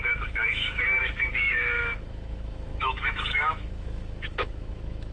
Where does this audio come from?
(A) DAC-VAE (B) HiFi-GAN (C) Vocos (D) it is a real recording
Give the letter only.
A